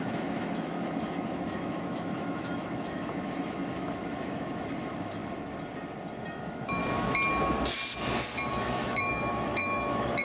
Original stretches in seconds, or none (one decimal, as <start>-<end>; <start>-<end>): 5.2-6.3; 6.8-8.5